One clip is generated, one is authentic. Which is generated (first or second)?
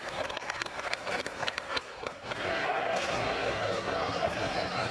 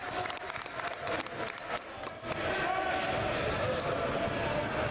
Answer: first